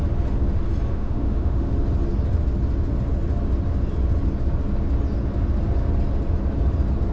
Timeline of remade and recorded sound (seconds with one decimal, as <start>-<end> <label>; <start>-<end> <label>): 0.0-0.9 recorded; 0.9-1.7 remade; 1.7-7.1 recorded